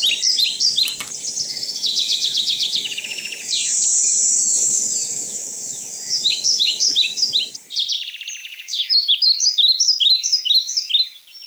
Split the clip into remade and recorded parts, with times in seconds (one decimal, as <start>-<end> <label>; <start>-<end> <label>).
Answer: 0.0-1.5 recorded; 1.5-3.5 remade; 3.5-4.3 recorded; 4.3-7.4 remade; 7.4-8.4 recorded; 8.4-10.9 remade; 10.9-11.5 recorded